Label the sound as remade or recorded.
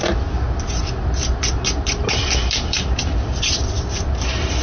recorded